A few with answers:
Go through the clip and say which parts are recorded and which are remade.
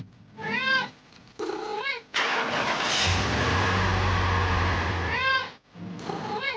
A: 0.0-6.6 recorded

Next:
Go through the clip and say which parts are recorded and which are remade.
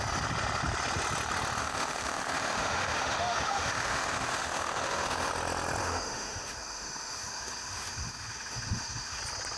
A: 0.0-1.6 recorded; 1.6-5.3 remade; 5.3-5.8 recorded; 5.8-9.2 remade; 9.2-9.6 recorded